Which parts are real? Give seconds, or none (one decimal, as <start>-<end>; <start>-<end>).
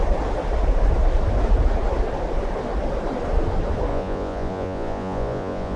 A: 0.0-3.9